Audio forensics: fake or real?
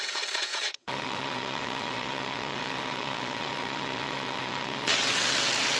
fake